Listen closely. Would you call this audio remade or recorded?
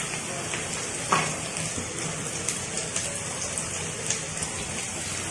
recorded